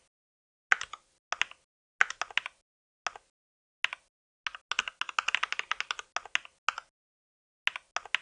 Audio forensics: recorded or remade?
recorded